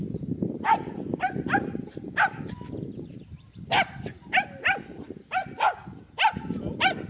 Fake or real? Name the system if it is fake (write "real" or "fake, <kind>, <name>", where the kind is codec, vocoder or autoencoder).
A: real